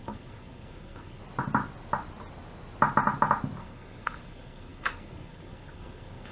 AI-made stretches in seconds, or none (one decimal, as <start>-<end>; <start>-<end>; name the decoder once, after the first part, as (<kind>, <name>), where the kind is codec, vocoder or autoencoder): 0.0-1.2 (codec, SNAC); 3.6-6.3